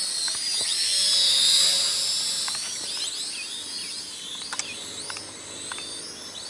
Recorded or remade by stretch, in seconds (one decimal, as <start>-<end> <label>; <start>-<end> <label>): 0.0-6.5 recorded